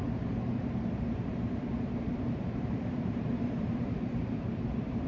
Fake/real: fake